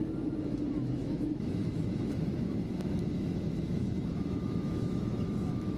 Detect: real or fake fake